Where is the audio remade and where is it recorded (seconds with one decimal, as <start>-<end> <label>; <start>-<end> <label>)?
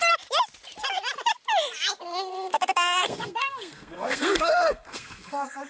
0.0-2.0 recorded; 2.0-5.7 remade